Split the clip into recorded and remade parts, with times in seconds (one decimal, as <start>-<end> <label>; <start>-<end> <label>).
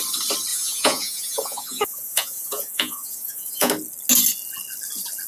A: 0.0-0.5 recorded; 0.5-3.7 remade; 3.7-5.3 recorded